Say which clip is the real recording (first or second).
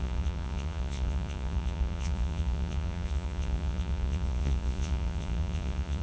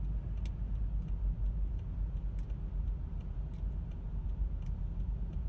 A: second